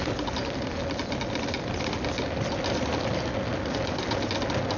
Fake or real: real